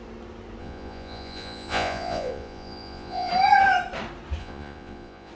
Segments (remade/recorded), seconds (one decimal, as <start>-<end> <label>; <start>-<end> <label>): 0.0-0.6 recorded; 0.6-3.3 remade; 3.3-4.4 recorded; 4.4-5.3 remade